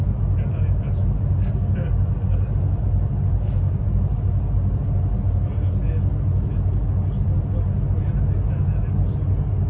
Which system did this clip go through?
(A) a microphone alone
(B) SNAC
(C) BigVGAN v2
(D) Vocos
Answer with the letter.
A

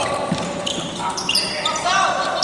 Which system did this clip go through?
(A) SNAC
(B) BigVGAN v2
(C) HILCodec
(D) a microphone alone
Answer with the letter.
B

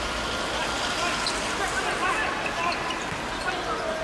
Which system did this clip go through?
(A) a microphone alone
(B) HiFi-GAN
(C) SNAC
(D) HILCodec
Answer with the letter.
A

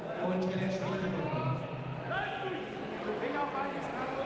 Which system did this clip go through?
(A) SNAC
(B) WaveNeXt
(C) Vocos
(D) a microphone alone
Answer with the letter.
D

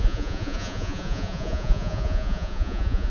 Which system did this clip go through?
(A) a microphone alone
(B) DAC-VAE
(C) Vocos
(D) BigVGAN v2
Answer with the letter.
C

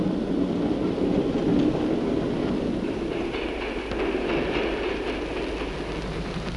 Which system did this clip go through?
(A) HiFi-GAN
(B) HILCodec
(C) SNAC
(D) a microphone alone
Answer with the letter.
D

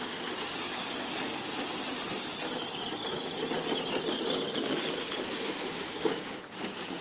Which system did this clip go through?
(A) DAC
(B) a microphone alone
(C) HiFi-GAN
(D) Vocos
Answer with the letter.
B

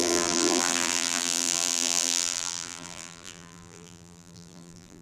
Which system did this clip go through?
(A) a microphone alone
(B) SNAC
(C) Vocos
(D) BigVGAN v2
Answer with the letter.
D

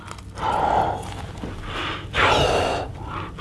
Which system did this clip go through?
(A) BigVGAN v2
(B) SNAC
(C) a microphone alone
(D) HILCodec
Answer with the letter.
C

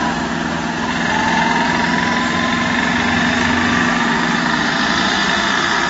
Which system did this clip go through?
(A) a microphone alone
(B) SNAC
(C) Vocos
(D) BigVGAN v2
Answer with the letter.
A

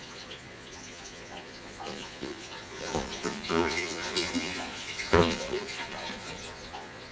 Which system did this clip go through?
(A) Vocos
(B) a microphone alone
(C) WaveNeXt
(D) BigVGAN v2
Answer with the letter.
A